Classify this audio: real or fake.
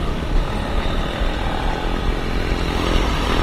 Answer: real